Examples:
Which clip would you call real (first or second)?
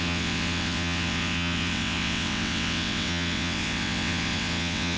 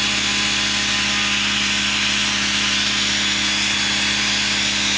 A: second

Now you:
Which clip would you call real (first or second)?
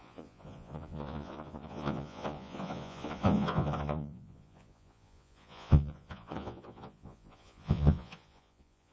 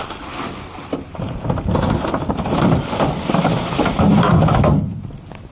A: second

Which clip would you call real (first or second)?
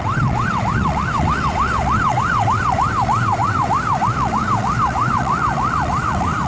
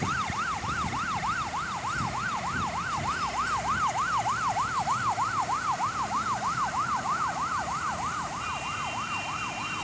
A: second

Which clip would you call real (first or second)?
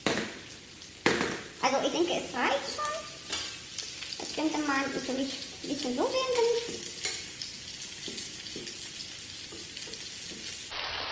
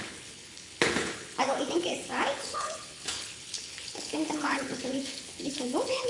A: first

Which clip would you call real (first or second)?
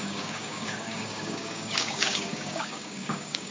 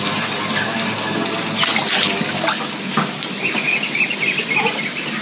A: second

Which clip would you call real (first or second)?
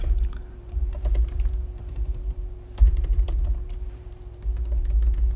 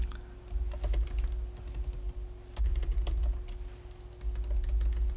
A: second